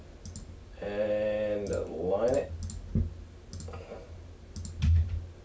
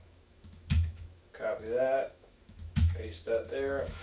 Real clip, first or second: first